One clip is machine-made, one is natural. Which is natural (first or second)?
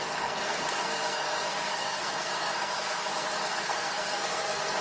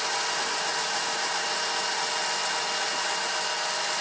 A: second